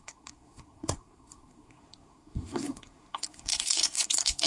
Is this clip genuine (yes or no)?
no